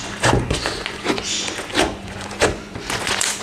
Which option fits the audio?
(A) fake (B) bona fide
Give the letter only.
A